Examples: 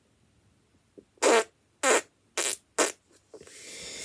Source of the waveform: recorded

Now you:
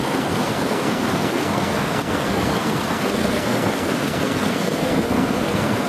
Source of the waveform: remade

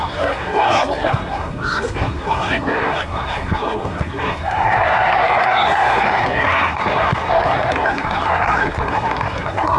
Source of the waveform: remade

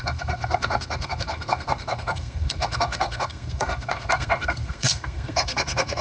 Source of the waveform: remade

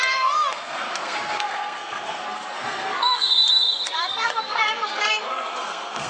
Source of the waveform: remade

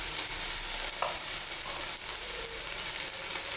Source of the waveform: recorded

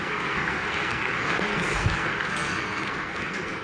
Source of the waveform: remade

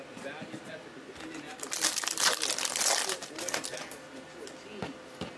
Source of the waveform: recorded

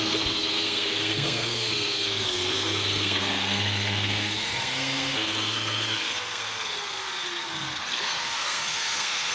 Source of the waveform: remade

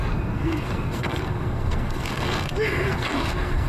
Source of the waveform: remade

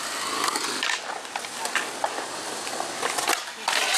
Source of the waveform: recorded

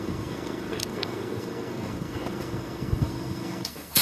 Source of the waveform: remade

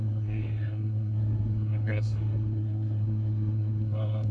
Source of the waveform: remade